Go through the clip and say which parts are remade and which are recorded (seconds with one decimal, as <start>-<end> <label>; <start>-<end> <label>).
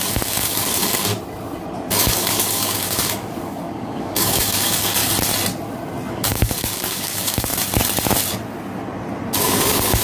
0.0-1.1 remade; 1.1-2.0 recorded; 2.0-5.0 remade; 5.0-6.1 recorded; 6.1-7.5 remade; 7.5-9.4 recorded; 9.4-10.0 remade